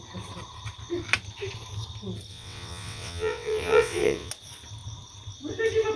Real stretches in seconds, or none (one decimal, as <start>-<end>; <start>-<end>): 0.0-2.3; 4.3-6.0

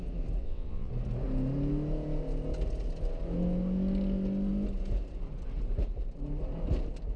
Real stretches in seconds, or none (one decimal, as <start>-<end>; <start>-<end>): 0.0-0.4; 0.9-7.2

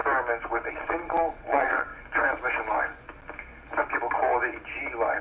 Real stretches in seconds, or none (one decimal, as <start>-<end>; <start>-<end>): 0.0-0.7; 1.9-5.2

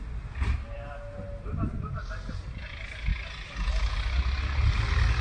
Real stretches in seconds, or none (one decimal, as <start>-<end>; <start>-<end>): 0.0-5.2